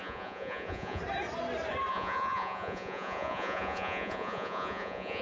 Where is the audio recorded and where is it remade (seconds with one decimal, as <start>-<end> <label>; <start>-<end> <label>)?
0.0-1.0 remade; 1.0-1.9 recorded; 1.9-5.2 remade